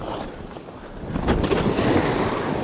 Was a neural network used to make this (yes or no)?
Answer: no